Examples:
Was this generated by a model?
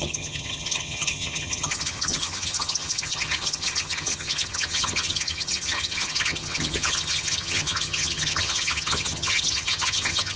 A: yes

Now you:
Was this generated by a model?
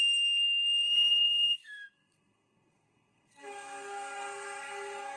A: yes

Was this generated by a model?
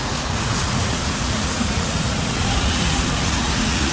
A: yes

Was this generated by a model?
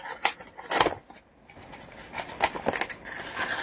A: no